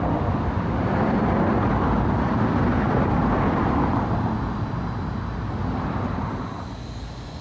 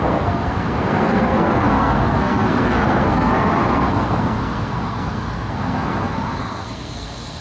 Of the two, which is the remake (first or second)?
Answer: second